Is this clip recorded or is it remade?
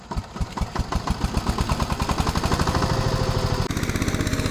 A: recorded